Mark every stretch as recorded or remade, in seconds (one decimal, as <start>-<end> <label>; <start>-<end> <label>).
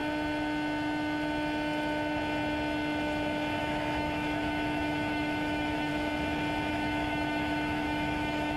0.0-3.6 recorded; 3.6-5.9 remade; 5.9-6.7 recorded; 6.7-8.6 remade